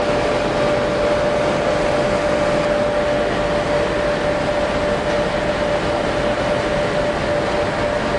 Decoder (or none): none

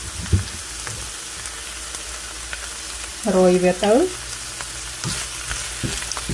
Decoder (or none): none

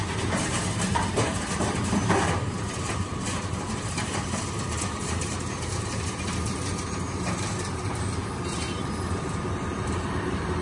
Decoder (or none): vocoder, BigVGAN v2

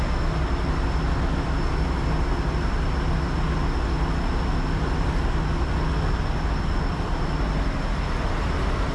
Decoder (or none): none